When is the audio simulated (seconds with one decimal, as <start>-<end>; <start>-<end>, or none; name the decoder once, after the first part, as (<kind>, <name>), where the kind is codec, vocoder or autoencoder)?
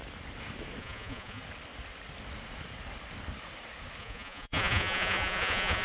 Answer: 0.8-1.4 (vocoder, Vocos); 4.0-5.8